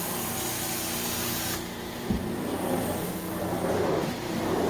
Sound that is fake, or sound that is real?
real